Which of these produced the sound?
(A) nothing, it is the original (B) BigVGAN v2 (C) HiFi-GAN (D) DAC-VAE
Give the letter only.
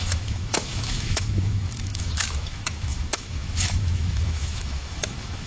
D